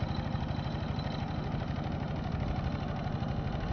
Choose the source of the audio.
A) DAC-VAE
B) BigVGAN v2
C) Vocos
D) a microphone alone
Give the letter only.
D